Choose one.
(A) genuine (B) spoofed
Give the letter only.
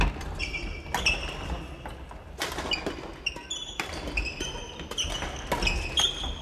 A